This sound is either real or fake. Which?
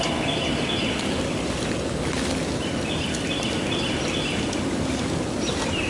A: real